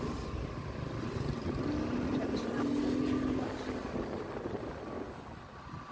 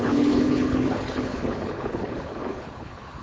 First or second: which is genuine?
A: first